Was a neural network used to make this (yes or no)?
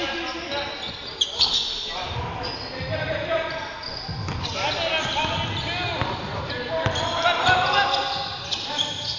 no